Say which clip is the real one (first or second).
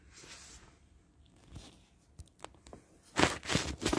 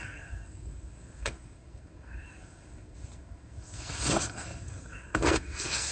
first